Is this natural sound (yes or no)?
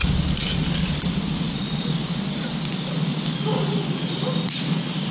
yes